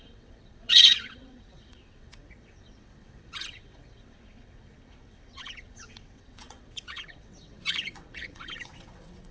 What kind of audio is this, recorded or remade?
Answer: remade